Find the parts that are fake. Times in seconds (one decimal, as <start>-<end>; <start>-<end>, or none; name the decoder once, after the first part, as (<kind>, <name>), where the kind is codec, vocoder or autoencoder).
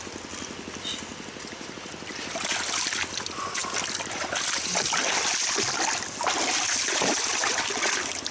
1.1-2.3 (vocoder, BigVGAN v2)